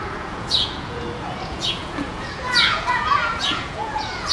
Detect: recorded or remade remade